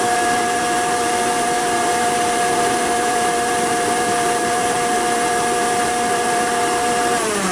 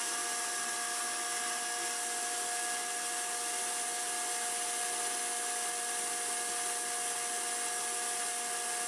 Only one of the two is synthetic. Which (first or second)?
first